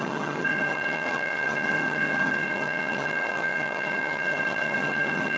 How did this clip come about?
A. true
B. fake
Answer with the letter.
B